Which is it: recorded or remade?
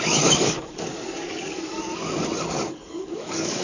remade